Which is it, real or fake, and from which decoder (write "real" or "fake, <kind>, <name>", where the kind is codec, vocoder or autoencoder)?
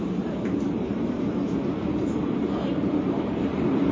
fake, vocoder, BigVGAN v2